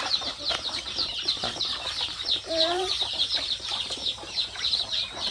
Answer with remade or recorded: remade